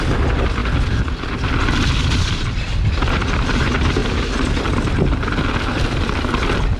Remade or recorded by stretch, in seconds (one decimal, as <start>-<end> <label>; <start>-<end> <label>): 0.0-6.8 recorded